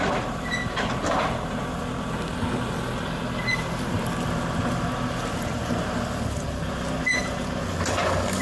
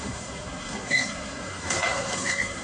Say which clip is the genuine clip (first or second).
first